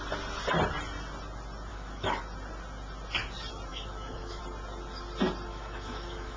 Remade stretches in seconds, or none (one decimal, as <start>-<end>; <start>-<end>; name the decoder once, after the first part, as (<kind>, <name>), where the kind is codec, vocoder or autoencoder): 1.7-2.2 (autoencoder, DAC-VAE); 3.7-4.4; 5.5-6.4